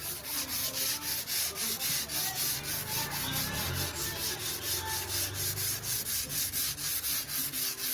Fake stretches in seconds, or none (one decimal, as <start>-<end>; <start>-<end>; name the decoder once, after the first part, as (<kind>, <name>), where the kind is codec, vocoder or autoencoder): none